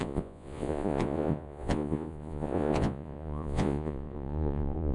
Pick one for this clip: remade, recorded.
remade